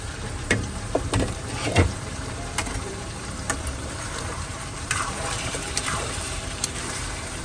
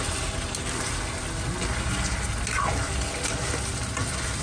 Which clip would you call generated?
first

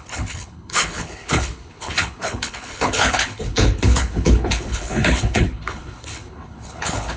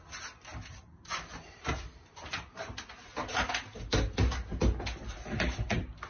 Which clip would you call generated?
first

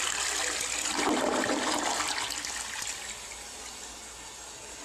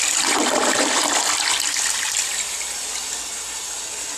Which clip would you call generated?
second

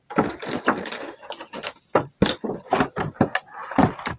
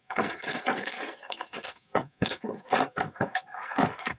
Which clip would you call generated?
second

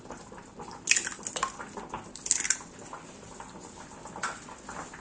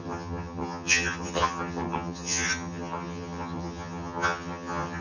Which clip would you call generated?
second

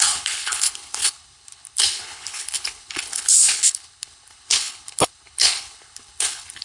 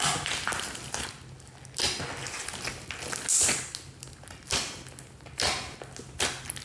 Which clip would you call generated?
first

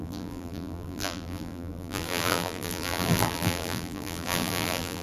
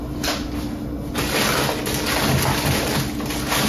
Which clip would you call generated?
first